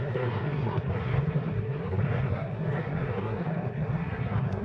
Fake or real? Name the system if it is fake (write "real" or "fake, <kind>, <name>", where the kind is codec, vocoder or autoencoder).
fake, codec, SNAC